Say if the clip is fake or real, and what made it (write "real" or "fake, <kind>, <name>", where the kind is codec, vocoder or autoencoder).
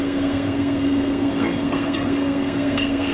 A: fake, codec, SNAC